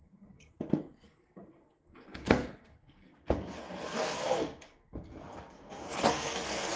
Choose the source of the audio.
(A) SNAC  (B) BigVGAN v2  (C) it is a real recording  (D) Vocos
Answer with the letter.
A